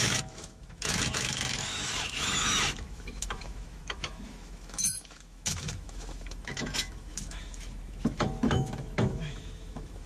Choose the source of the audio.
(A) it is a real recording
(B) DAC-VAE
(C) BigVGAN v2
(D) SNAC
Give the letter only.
B